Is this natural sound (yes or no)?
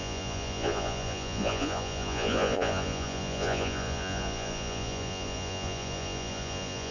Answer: no